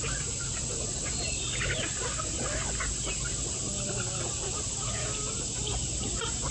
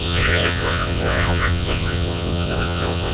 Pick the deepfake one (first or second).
second